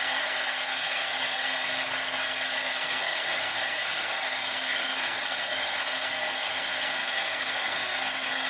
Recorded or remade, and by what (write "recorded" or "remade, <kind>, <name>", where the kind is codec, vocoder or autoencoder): remade, codec, SNAC